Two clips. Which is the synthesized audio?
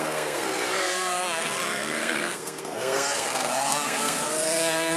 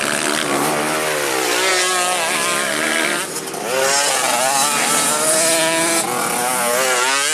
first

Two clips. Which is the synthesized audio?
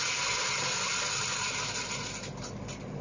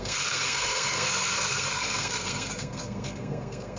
second